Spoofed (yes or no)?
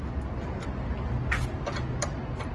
no